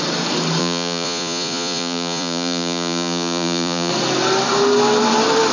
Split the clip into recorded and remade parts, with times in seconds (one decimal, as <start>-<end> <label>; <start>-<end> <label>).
0.0-0.6 recorded; 0.6-3.9 remade; 3.9-5.5 recorded